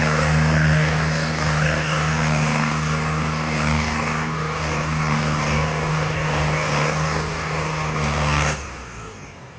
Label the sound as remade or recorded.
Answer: remade